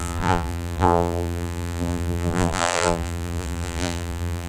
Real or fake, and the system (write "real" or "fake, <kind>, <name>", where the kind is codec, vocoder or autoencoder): fake, vocoder, BigVGAN v2